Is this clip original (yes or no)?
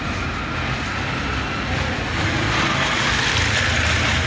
yes